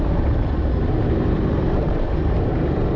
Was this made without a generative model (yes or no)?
no